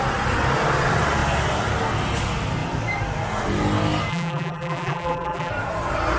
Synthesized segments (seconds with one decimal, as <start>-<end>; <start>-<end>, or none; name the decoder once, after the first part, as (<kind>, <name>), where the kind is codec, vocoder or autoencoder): 4.1-5.5 (vocoder, BigVGAN v2)